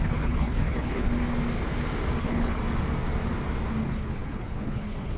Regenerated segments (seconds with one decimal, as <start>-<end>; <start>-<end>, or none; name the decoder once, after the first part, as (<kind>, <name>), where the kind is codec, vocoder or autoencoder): 0.0-1.1 (codec, HILCodec); 2.2-2.6; 3.8-5.2